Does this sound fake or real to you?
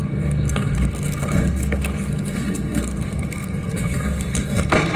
fake